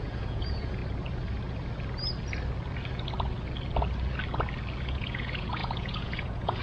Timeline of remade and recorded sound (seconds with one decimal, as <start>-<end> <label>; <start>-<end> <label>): 0.0-0.8 remade; 0.8-4.8 recorded; 4.8-6.6 remade